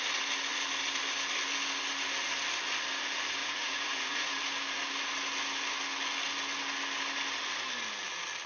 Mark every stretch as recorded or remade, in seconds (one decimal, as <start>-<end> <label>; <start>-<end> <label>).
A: 0.0-3.4 recorded; 3.4-4.3 remade; 4.3-8.5 recorded